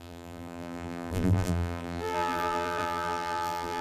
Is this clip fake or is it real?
fake